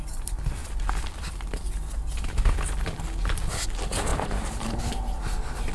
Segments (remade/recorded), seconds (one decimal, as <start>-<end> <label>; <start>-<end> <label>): 0.0-4.1 recorded; 4.1-4.8 remade; 4.8-5.7 recorded